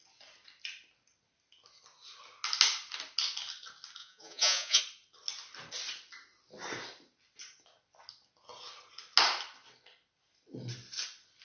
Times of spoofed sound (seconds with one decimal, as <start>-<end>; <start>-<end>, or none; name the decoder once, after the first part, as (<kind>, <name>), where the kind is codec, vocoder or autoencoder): 4.0-4.8 (vocoder, Vocos)